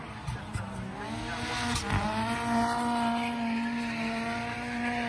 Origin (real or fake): real